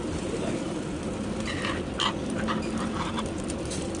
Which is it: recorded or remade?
recorded